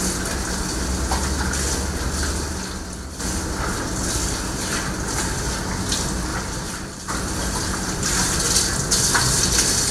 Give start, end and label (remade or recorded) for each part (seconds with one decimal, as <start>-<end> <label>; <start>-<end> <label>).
0.0-6.3 recorded; 6.3-8.4 remade; 8.4-9.9 recorded